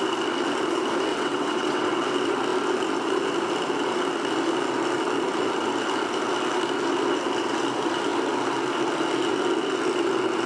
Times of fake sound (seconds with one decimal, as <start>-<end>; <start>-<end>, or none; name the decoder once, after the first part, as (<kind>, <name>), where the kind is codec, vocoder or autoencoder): 1.1-1.9 (vocoder, WaveNeXt)